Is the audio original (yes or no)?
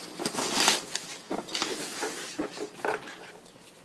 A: yes